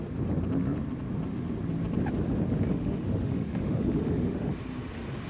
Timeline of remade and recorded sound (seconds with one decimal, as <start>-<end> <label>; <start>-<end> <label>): 0.0-2.7 recorded; 2.7-4.5 remade; 4.5-5.3 recorded